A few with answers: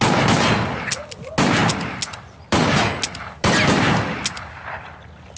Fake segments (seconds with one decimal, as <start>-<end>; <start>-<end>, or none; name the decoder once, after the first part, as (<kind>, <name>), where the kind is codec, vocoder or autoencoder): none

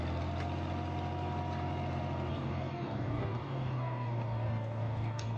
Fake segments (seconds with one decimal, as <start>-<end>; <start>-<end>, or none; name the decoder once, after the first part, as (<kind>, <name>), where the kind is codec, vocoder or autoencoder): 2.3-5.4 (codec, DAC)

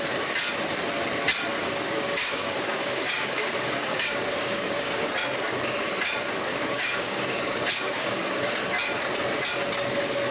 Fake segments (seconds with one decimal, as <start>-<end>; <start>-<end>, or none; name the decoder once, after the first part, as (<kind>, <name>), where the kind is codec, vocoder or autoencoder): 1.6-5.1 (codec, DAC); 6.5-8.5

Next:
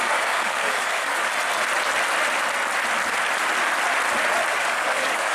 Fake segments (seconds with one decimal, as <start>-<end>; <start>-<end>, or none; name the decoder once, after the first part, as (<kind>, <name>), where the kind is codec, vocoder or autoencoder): 0.0-1.3 (codec, DAC); 4.5-5.3

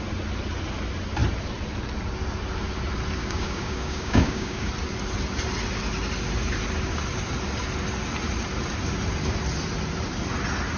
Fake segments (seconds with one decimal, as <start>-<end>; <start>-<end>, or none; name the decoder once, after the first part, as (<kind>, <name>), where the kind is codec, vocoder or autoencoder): 3.2-4.7 (codec, DAC)

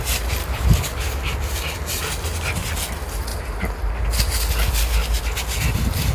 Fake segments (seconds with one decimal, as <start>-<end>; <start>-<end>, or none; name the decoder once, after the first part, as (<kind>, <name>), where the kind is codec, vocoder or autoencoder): 0.4-1.2 (codec, DAC)